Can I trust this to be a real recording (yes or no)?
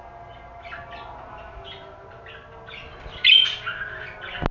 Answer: yes